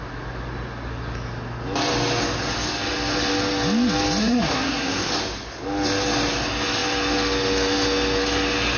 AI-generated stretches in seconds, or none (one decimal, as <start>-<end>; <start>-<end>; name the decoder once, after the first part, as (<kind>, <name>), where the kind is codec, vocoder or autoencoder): 4.2-5.1 (codec, SNAC)